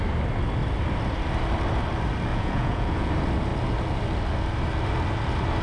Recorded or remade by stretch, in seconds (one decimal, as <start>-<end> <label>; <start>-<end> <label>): 0.0-2.3 recorded; 2.3-3.1 remade; 3.1-5.6 recorded